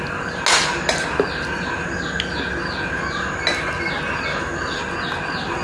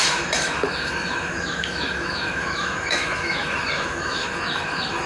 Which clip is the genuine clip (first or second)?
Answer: first